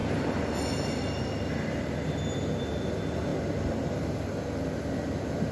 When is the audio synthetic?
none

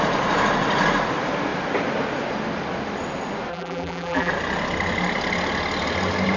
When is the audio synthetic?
3.5-4.3 (vocoder, BigVGAN v2)

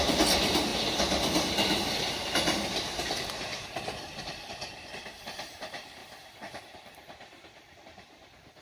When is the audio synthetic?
0.0-6.0 (vocoder, BigVGAN v2); 6.6-8.6

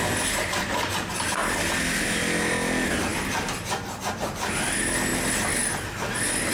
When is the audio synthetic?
none

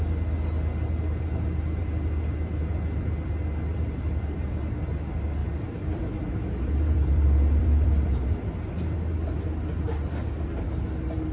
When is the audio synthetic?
1.8-3.3 (vocoder, BigVGAN v2); 3.7-4.6; 5.4-8.3

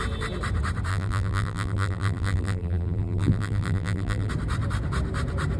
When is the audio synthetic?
0.9-4.3 (vocoder, BigVGAN v2)

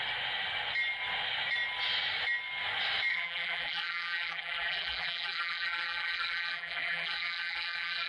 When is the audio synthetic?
3.1-8.1 (vocoder, BigVGAN v2)

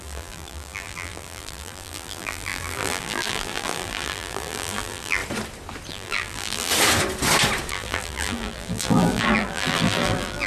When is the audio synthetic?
0.0-5.2 (vocoder, BigVGAN v2); 5.9-6.7; 7.7-10.5